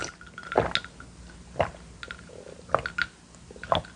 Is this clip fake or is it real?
real